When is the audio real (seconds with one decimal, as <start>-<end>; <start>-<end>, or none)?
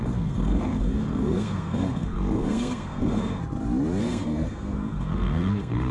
3.4-4.0